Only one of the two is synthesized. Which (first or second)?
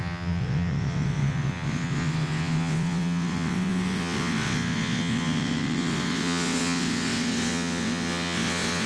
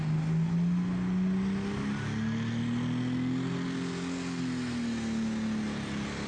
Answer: first